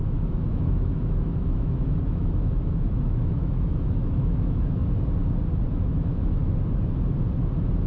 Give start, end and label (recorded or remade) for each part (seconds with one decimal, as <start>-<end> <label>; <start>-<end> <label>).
0.0-4.8 remade; 4.8-5.7 recorded; 5.7-6.4 remade; 6.4-7.9 recorded